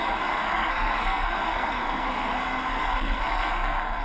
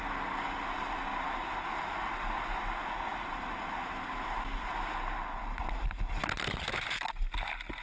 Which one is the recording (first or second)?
second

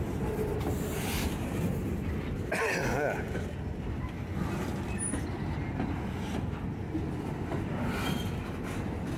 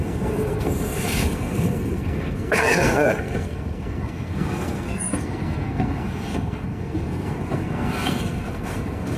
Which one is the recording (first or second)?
first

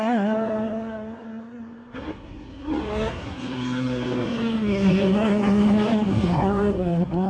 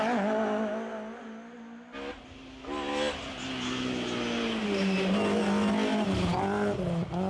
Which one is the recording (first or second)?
second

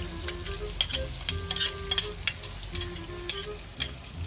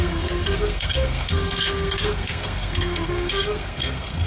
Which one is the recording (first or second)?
first